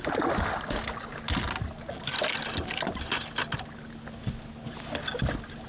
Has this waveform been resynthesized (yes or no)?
no